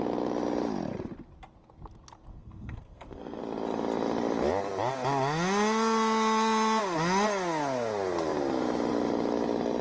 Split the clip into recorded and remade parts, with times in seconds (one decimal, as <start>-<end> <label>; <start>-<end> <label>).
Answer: 0.0-2.3 recorded; 2.3-3.4 remade; 3.4-9.8 recorded